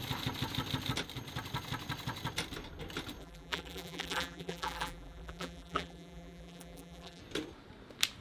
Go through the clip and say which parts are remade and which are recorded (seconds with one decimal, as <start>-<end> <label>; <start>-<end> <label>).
0.0-3.2 recorded; 3.2-7.2 remade; 7.2-8.2 recorded